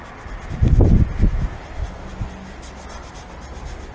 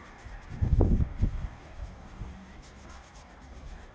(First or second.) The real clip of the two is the first